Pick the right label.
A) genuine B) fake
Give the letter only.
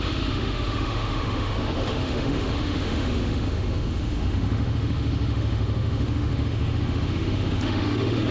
B